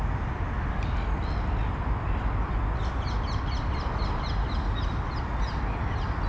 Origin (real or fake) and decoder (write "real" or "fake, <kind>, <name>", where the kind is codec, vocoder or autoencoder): real